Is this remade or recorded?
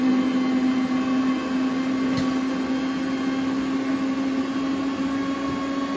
recorded